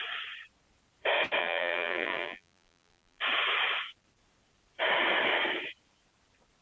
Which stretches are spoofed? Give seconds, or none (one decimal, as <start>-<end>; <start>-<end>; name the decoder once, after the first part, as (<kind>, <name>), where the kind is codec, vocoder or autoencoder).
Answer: 1.4-3.2 (vocoder, BigVGAN v2)